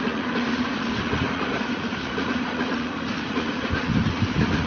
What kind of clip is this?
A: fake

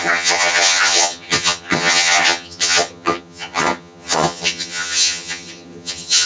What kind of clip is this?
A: fake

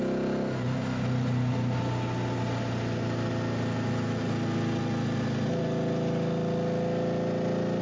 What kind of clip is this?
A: real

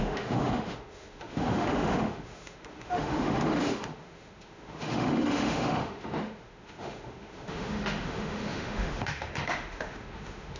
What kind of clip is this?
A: fake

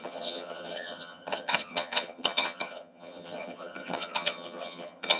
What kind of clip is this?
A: fake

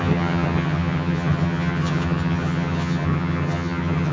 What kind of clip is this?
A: fake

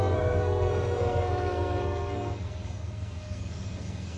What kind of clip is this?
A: fake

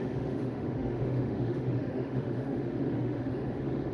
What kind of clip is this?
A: fake